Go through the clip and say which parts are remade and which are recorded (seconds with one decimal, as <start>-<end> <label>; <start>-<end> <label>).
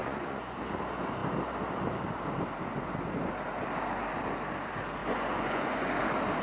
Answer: 0.0-0.6 remade; 0.6-5.0 recorded; 5.0-5.9 remade; 5.9-6.4 recorded